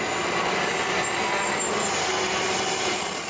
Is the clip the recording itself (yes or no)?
yes